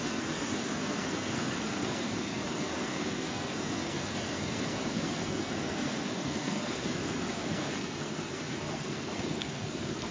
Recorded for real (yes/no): no